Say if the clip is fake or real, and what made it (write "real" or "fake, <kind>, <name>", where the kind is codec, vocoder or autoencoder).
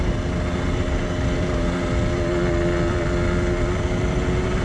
real